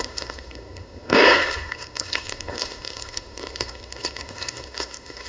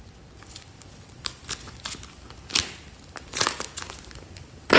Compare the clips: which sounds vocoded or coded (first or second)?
first